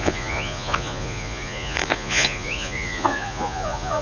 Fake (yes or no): yes